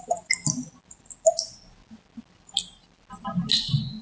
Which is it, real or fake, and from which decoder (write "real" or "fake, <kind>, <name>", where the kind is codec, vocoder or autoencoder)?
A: real